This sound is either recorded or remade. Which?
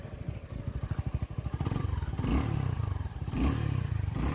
recorded